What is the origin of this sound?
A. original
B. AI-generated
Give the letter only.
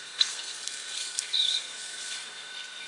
B